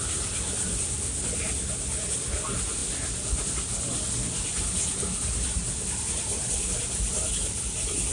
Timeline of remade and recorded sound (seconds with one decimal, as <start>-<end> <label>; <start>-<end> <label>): 0.0-8.1 recorded